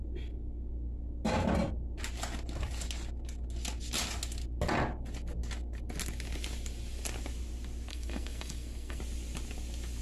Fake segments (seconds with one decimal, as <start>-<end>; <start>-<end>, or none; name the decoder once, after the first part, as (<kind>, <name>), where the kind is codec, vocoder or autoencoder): 7.9-9.0 (codec, SNAC)

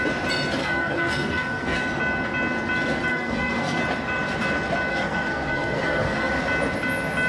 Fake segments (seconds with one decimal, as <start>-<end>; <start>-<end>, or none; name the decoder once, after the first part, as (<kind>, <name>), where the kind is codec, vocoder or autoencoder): 0.6-1.8 (codec, SNAC); 3.1-3.8; 4.9-6.3

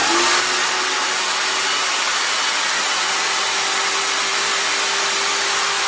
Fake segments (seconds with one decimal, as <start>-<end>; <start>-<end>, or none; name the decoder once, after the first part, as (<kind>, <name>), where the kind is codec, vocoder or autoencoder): none

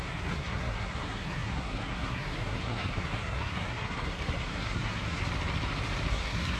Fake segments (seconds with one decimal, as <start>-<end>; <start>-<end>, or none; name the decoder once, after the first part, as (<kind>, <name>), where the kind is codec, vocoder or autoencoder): 0.0-5.2 (codec, SNAC); 6.1-6.6

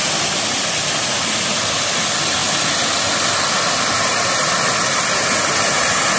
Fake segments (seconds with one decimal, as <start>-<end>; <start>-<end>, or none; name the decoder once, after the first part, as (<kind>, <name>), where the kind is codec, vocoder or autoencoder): none

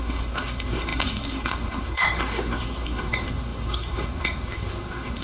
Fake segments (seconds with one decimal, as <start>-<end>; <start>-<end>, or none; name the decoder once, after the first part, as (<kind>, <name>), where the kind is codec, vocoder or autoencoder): 0.0-5.2 (codec, SNAC)

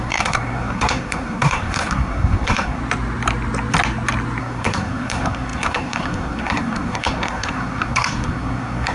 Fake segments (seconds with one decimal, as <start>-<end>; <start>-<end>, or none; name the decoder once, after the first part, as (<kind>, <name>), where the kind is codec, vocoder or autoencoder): 0.0-2.8 (codec, SNAC); 4.4-8.9